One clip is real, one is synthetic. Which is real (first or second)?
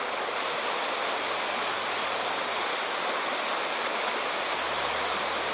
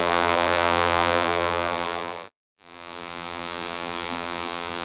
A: first